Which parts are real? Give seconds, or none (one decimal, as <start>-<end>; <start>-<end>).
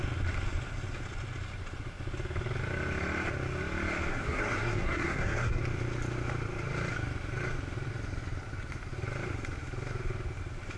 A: 0.0-4.1; 5.6-10.8